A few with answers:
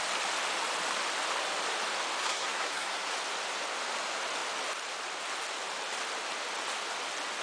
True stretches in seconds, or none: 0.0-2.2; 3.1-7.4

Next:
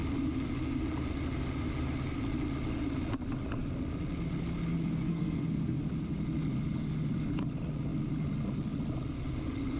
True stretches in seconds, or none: 0.0-5.1; 5.8-9.8

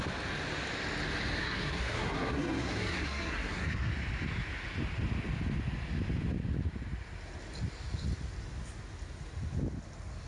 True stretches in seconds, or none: 0.0-1.4; 3.9-10.3